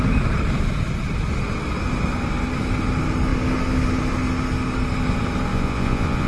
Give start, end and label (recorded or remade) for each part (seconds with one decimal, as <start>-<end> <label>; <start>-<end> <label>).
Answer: 0.0-5.5 recorded; 5.5-6.3 remade